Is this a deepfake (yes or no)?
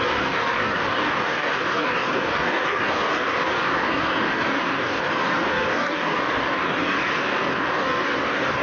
yes